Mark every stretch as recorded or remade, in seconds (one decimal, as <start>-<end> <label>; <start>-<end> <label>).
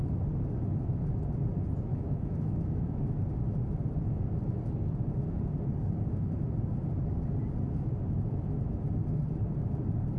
0.0-1.9 recorded; 1.9-3.0 remade; 3.0-10.2 recorded